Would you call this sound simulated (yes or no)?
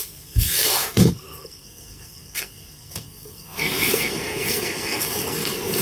yes